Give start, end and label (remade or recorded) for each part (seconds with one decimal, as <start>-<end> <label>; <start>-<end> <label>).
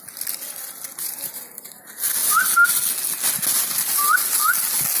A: 0.0-5.0 recorded